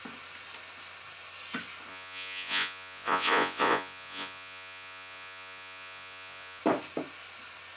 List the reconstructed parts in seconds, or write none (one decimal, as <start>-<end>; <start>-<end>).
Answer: 1.9-6.6